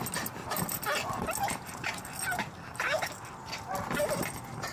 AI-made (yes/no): no